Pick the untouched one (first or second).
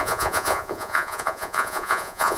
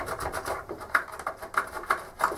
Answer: second